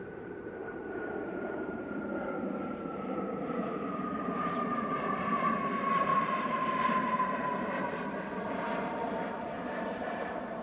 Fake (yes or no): yes